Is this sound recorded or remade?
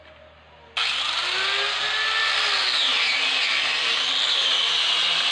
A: recorded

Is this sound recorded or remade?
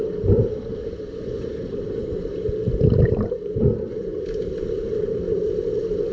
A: recorded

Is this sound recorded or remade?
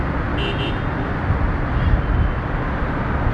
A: recorded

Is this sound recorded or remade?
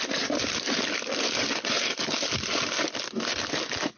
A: recorded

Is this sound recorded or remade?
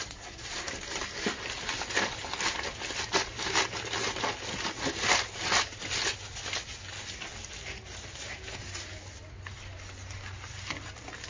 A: recorded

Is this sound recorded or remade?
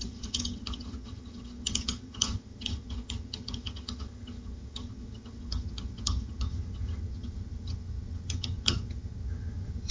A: remade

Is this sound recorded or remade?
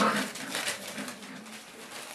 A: recorded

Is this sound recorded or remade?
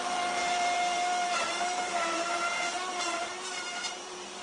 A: remade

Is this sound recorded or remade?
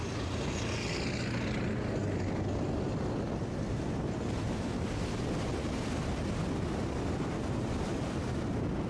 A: recorded